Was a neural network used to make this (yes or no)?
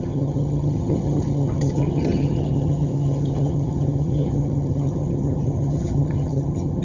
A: yes